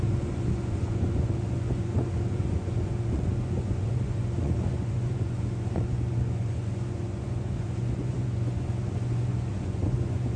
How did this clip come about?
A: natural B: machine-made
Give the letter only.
B